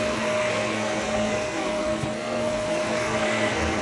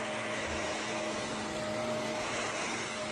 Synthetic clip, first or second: first